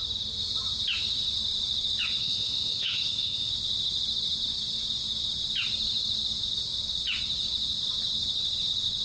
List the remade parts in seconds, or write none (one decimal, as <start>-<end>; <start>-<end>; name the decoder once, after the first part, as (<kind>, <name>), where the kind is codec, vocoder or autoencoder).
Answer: 2.2-3.5 (codec, ZipCodec)